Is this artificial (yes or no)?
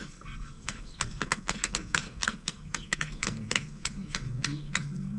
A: yes